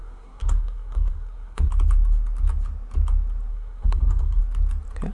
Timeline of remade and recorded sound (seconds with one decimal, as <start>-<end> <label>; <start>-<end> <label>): 0.0-1.7 remade; 1.7-3.5 recorded; 3.5-4.4 remade; 4.4-5.1 recorded